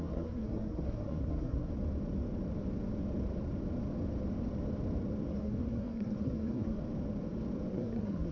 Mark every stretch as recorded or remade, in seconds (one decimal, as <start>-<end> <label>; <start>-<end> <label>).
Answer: 0.0-1.7 remade; 1.7-5.3 recorded; 5.3-6.8 remade; 6.8-7.7 recorded; 7.7-8.3 remade